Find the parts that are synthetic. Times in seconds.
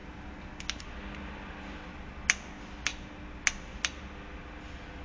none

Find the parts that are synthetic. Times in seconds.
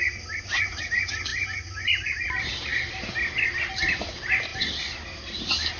none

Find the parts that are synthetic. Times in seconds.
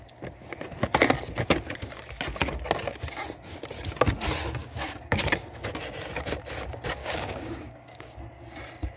4.6-5.2; 7.0-8.2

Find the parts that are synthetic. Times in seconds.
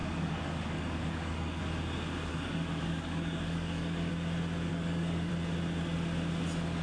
0.0-1.6; 2.3-4.1; 4.7-5.3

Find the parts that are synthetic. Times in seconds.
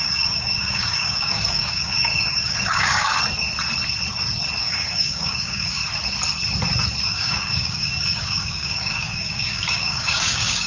0.0-3.1; 4.6-5.8; 7.0-10.7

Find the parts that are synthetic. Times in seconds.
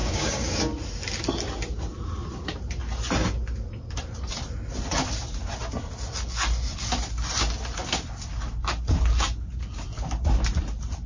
0.0-0.6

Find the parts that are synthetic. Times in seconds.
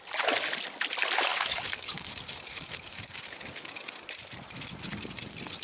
1.3-4.0